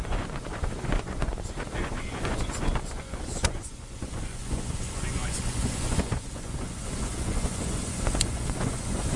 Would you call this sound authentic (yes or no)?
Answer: no